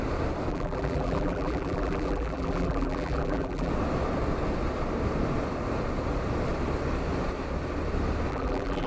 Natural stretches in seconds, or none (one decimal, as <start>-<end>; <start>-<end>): 0.0-0.5; 3.7-8.3